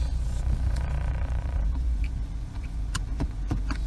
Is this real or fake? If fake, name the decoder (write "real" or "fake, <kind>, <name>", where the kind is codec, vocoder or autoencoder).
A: fake, vocoder, Vocos